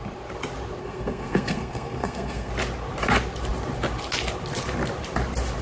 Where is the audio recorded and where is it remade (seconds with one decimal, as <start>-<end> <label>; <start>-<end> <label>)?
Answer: 0.0-0.8 recorded; 0.8-2.5 remade; 2.5-5.6 recorded